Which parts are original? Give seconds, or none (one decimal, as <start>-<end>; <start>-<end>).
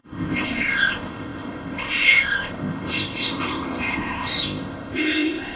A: none